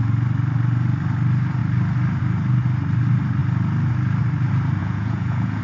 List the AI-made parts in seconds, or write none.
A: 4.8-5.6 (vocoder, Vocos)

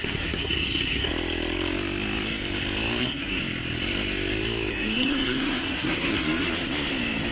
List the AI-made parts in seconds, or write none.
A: 0.0-1.1 (codec, SNAC); 3.0-3.4; 4.7-6.5

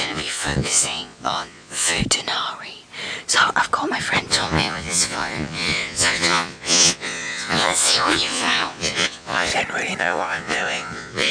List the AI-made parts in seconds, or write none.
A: 0.0-2.0 (vocoder, Vocos); 4.3-9.5; 10.0-11.3

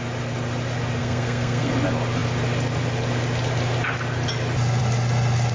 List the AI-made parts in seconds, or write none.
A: 1.0-1.7 (codec, SNAC)

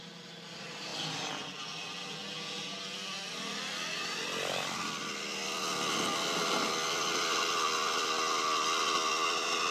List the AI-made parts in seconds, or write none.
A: none

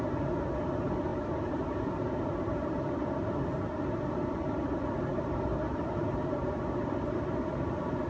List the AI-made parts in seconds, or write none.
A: 1.1-2.9 (vocoder, BigVGAN v2); 5.1-7.4

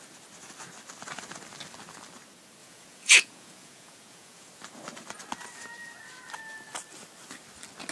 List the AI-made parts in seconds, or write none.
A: 2.6-4.5 (vocoder, Vocos)

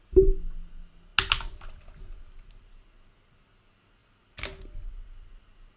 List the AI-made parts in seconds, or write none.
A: none